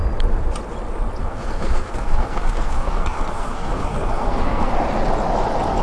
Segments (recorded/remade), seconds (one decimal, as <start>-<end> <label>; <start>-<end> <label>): 0.0-1.2 recorded; 1.2-4.7 remade; 4.7-5.8 recorded